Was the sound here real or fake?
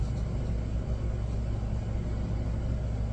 real